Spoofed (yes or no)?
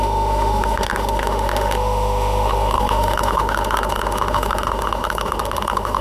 yes